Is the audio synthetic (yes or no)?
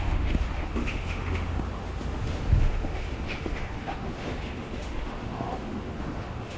yes